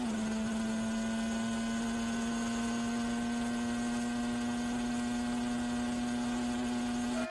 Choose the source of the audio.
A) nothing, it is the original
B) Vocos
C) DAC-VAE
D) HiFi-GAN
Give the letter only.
A